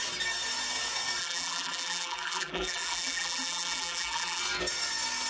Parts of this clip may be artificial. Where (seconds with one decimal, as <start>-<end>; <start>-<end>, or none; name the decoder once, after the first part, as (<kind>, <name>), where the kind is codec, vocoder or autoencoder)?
1.2-4.4 (vocoder, BigVGAN v2)